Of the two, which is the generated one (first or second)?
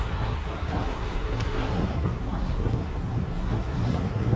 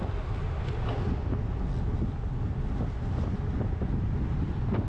first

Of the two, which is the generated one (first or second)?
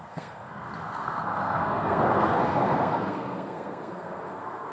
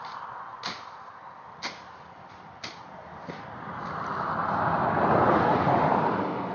first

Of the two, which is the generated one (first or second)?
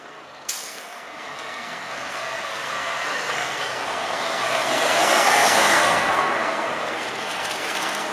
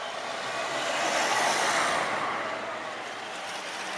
first